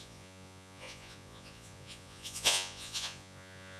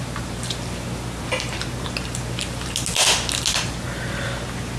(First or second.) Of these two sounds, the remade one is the first